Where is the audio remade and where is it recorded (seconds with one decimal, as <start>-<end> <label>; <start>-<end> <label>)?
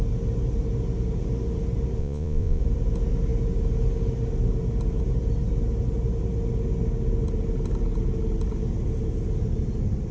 0.0-2.0 recorded; 2.0-2.6 remade; 2.6-10.1 recorded